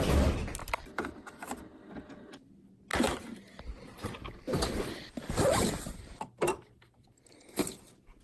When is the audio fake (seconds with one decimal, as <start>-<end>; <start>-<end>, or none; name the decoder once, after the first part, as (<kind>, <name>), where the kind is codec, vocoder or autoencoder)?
2.9-7.3 (vocoder, BigVGAN v2)